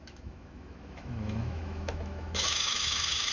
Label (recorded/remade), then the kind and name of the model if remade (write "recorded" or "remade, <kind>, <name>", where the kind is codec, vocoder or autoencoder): remade, autoencoder, DAC-VAE